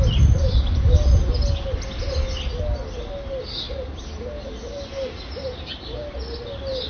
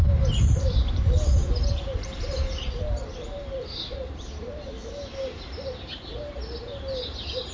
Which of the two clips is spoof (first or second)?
second